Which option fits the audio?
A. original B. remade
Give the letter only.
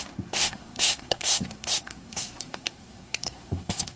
B